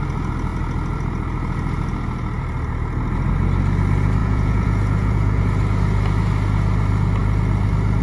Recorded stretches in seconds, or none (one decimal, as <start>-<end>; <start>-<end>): 0.0-4.2; 5.4-8.0